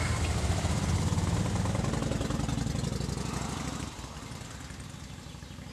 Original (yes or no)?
yes